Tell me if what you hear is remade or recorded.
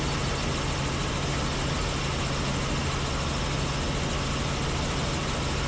recorded